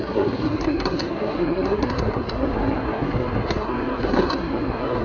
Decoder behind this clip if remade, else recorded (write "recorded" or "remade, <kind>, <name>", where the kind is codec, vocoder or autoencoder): remade, codec, SNAC